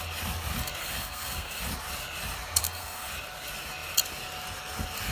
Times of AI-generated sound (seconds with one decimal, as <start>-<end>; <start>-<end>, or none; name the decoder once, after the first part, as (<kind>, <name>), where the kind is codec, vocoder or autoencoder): 0.8-1.6 (codec, SNAC); 2.6-3.1